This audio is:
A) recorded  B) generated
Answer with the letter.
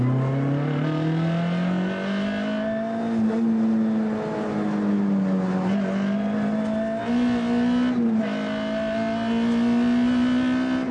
A